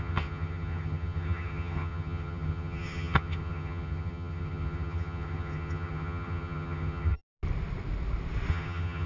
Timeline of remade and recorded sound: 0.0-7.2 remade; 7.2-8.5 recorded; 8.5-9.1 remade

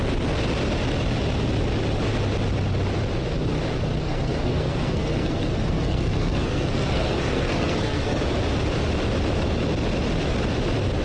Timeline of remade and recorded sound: 0.0-4.0 recorded; 4.0-8.2 remade; 8.2-11.0 recorded